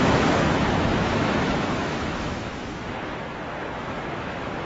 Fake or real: fake